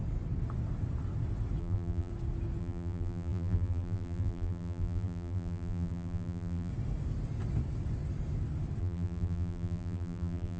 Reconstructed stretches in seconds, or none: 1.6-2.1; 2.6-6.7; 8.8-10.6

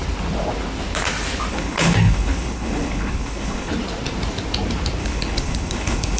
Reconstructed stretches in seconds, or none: 1.5-3.7; 5.0-6.2

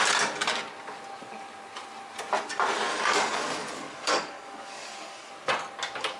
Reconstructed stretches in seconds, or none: 2.9-5.3

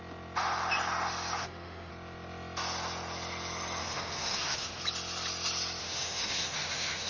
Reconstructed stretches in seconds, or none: 1.4-1.9; 3.8-4.8; 5.8-7.1

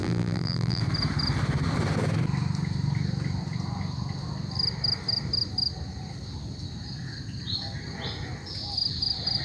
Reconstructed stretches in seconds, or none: 0.0-0.8

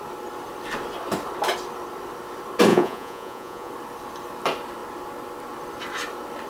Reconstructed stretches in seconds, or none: 2.7-3.7